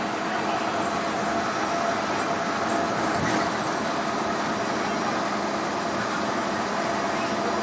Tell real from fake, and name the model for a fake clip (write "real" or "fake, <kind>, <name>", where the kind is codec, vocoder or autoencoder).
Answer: real